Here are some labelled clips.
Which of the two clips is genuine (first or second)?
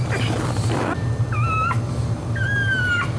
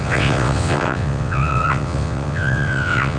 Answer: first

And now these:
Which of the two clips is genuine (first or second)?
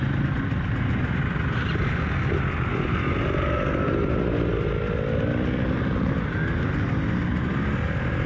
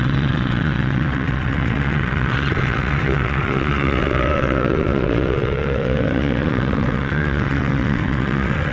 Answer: first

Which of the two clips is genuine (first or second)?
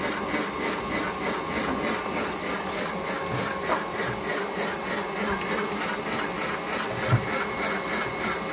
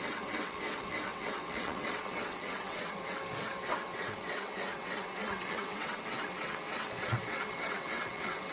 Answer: first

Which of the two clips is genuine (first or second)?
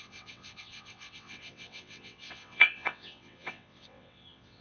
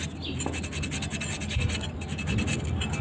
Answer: second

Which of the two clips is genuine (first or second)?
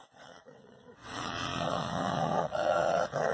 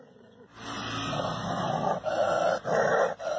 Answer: second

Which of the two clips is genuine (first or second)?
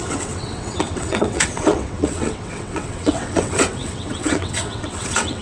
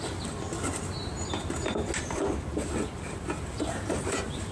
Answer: second